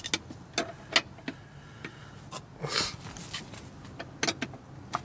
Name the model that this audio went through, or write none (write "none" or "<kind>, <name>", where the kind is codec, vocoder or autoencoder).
none